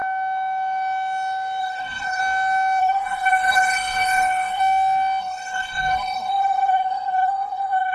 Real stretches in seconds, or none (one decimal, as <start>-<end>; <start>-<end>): 0.0-1.6; 2.2-2.8; 4.6-5.2